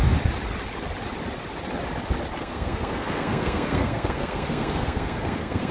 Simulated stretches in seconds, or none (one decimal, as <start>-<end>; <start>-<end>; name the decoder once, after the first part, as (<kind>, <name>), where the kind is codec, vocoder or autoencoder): 2.4-5.7 (codec, SNAC)